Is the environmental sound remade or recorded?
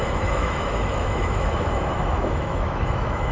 remade